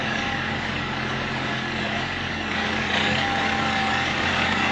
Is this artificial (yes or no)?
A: yes